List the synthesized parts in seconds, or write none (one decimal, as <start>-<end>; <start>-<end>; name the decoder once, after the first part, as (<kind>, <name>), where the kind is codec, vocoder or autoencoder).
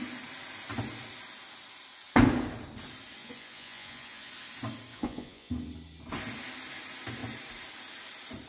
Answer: 3.2-4.3 (vocoder, Vocos); 4.9-5.5